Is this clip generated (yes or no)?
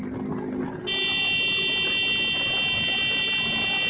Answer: no